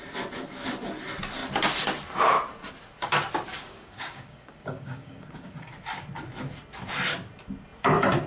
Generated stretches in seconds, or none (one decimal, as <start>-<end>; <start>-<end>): 3.5-5.7